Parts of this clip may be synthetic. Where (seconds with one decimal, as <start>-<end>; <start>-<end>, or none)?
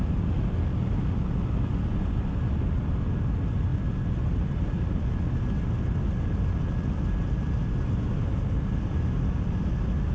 1.9-2.4